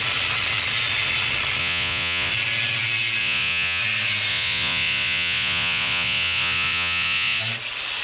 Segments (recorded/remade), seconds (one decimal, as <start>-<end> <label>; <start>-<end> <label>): 0.0-1.6 recorded; 1.6-2.3 remade; 2.3-3.2 recorded; 3.2-3.8 remade; 3.8-4.3 recorded; 4.3-7.4 remade; 7.4-8.0 recorded